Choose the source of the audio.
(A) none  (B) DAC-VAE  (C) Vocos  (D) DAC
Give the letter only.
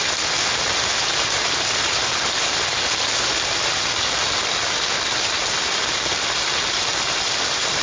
A